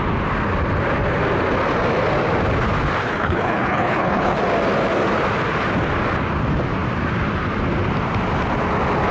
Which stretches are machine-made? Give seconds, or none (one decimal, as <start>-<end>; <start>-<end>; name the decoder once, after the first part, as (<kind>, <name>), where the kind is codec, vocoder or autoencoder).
3.0-4.4 (codec, HILCodec)